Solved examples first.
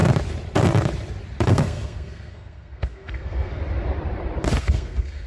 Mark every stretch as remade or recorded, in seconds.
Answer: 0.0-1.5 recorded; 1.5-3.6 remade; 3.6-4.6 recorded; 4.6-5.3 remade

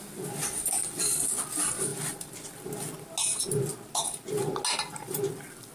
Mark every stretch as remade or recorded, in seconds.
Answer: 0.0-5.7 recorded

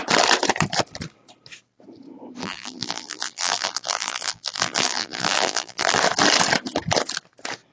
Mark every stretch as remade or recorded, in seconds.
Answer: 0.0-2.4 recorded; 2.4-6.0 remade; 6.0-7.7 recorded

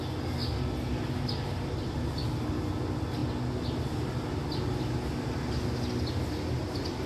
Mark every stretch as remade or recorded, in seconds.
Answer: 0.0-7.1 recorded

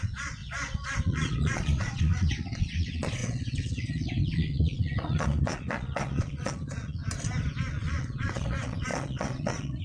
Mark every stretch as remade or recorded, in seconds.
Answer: 0.0-7.0 remade; 7.0-7.7 recorded; 7.7-9.8 remade

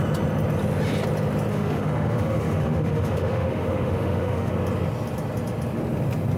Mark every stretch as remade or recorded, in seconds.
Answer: 0.0-1.5 recorded; 1.5-4.5 remade; 4.5-6.4 recorded

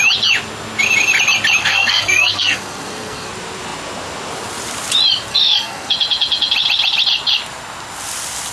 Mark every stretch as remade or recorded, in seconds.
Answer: 0.0-1.6 recorded; 1.6-3.3 remade; 3.3-5.3 recorded; 5.3-5.9 remade; 5.9-8.5 recorded

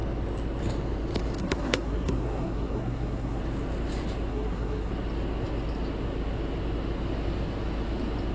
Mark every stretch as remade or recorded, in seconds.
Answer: 0.0-1.4 recorded; 1.4-3.4 remade; 3.4-4.3 recorded; 4.3-4.9 remade; 4.9-8.3 recorded